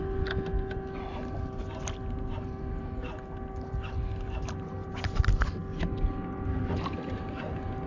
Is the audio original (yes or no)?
yes